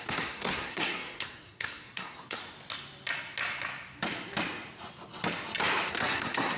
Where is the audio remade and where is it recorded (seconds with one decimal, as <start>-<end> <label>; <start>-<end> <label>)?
0.0-2.4 remade; 2.4-5.9 recorded; 5.9-6.6 remade